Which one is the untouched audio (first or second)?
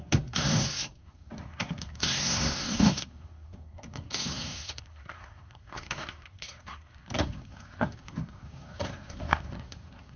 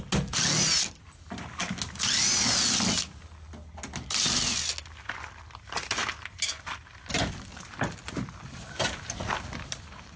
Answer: second